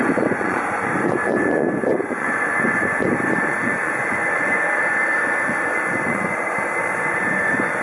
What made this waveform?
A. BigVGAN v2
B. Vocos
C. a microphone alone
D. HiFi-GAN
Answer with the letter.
B